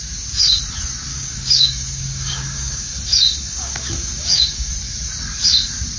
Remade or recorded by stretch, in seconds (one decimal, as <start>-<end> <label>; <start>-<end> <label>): 0.0-1.1 recorded; 1.1-4.7 remade; 4.7-6.0 recorded